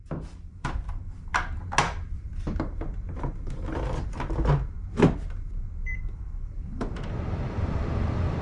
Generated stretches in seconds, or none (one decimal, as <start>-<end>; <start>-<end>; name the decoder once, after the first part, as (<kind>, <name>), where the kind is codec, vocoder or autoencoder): 0.0-1.3 (vocoder, BigVGAN v2); 5.9-8.4